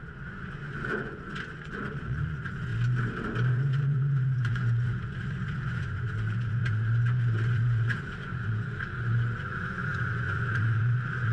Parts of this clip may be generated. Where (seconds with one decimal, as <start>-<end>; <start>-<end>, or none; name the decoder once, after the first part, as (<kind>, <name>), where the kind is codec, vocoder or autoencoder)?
0.0-2.7 (vocoder, Vocos); 3.5-11.3